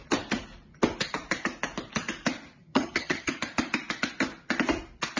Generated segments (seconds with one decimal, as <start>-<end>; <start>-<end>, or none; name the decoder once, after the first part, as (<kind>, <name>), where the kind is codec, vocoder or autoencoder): 2.6-3.3 (vocoder, HiFi-GAN)